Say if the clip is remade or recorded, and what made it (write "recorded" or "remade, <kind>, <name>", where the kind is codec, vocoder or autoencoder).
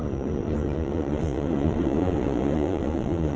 remade, vocoder, Vocos